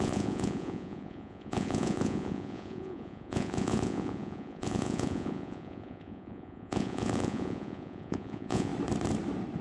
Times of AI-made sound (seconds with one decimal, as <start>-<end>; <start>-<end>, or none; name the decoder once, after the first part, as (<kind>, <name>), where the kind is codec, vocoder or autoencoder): 0.0-8.7 (vocoder, Vocos)